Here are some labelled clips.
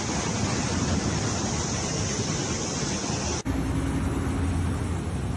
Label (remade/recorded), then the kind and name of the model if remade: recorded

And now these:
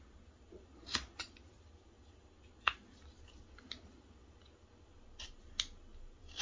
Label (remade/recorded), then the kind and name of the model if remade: recorded